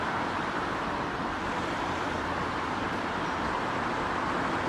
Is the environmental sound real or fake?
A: real